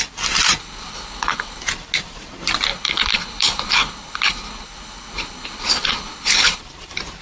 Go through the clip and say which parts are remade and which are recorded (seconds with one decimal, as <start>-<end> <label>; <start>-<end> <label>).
0.0-0.6 recorded; 0.6-1.6 remade; 1.6-2.7 recorded; 2.7-6.6 remade; 6.6-7.2 recorded